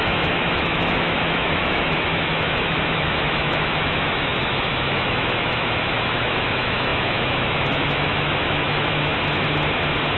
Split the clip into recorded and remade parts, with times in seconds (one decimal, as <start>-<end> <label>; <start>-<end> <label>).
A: 0.0-9.1 remade; 9.1-10.2 recorded